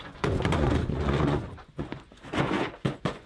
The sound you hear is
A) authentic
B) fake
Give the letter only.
B